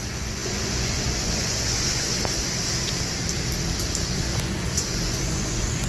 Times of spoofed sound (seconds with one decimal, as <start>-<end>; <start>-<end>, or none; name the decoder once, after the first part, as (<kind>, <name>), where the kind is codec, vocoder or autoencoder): 0.0-2.4 (vocoder, Vocos); 4.0-5.9